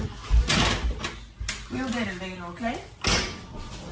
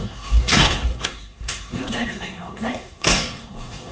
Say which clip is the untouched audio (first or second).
first